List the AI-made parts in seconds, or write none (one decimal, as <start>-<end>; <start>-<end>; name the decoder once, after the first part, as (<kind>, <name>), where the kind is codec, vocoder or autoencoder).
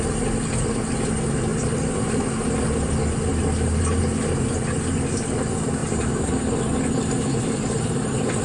3.3-4.0 (vocoder, BigVGAN v2); 5.8-8.4